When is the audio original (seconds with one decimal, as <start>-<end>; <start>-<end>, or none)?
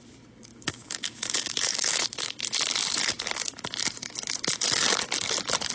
0.0-0.5; 2.4-5.7